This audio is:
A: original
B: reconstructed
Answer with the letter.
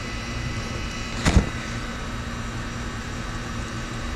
B